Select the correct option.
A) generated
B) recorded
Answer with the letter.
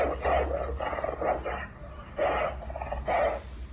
B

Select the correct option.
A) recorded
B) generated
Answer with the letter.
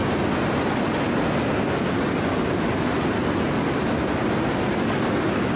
A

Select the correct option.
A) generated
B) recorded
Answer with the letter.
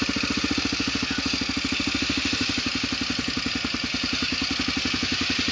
B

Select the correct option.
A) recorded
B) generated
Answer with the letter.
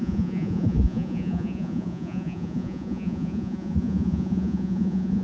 B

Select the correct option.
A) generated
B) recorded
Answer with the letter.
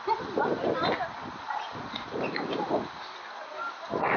B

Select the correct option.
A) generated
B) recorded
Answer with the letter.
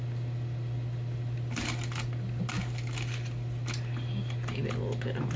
B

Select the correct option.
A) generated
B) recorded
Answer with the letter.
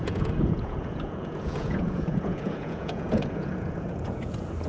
A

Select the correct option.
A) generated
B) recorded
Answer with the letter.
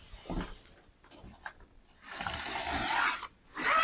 B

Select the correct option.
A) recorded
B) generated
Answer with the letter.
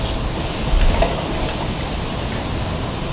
A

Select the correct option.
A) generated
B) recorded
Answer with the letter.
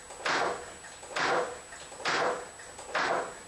B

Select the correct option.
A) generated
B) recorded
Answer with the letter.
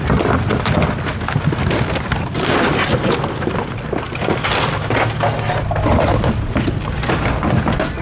B